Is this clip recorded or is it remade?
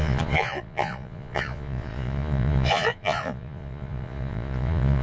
remade